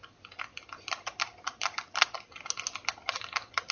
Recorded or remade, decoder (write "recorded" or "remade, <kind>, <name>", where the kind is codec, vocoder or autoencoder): recorded